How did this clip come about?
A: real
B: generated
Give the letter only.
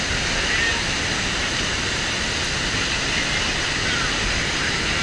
A